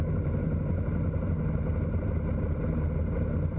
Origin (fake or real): real